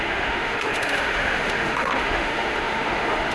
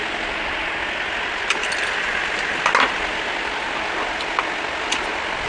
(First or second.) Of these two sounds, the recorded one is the second